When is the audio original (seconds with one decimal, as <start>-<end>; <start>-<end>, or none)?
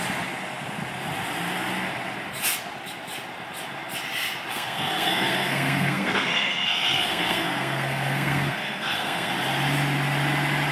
0.0-4.5; 9.3-10.7